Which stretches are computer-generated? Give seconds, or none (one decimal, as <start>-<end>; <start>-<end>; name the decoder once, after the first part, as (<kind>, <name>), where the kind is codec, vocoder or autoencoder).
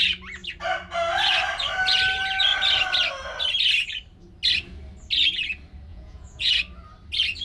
5.9-6.6 (vocoder, Vocos)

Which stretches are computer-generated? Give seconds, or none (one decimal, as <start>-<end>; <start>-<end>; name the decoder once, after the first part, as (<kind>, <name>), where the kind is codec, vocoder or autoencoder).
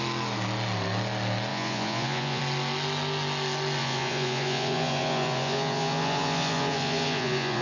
1.5-2.4 (vocoder, Vocos); 3.8-7.6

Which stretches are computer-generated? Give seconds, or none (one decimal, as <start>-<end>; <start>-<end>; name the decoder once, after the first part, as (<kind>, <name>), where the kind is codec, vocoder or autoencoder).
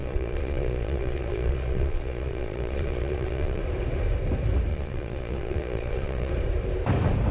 0.0-3.6 (vocoder, Vocos); 4.7-6.3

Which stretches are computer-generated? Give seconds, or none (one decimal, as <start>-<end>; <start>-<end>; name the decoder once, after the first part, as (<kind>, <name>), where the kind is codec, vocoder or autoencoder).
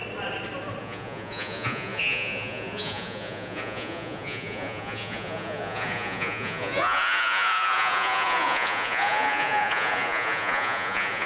0.8-11.3 (vocoder, Vocos)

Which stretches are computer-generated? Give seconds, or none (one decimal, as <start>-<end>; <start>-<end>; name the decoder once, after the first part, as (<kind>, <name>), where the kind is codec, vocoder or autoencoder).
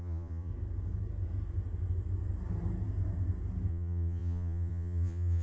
0.0-0.5 (vocoder, Vocos); 3.7-5.4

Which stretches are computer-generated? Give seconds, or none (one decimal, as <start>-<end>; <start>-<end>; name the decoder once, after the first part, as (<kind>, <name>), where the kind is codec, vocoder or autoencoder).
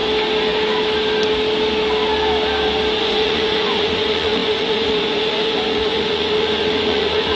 3.0-7.3 (vocoder, Vocos)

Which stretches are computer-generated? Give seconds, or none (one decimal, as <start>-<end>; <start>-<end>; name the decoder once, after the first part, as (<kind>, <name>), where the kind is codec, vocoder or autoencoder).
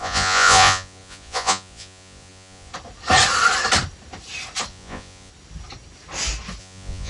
0.0-2.7 (vocoder, Vocos); 4.7-5.3; 6.6-7.1